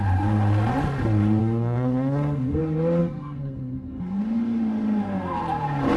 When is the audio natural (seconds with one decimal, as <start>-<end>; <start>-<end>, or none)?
0.0-1.4; 2.6-3.0; 4.2-6.0